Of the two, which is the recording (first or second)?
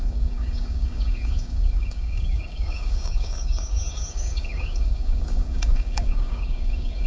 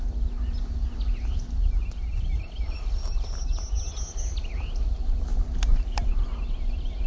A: second